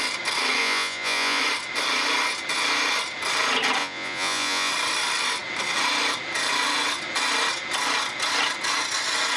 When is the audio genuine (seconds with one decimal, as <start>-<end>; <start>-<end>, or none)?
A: 0.0-0.6; 1.4-3.8; 4.7-9.4